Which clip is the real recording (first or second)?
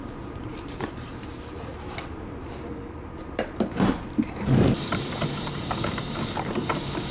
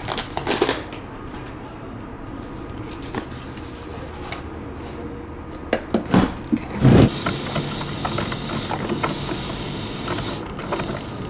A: second